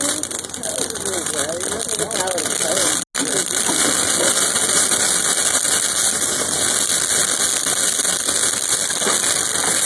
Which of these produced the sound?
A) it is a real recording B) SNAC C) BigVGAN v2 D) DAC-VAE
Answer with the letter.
A